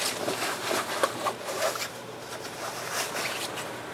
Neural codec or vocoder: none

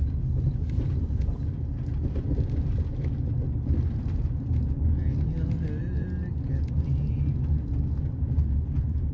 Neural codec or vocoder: none